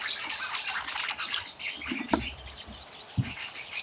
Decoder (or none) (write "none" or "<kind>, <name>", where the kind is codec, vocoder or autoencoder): none